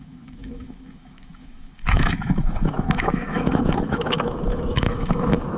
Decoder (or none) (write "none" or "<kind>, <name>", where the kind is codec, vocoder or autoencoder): autoencoder, DAC-VAE